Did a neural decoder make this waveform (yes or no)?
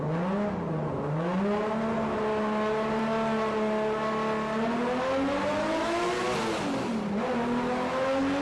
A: no